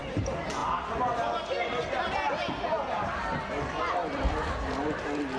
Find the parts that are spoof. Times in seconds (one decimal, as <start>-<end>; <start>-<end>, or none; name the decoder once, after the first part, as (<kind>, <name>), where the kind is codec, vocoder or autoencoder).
0.0-0.6 (vocoder, BigVGAN v2); 3.8-5.4